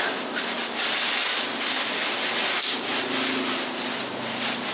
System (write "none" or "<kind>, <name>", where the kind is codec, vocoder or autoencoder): none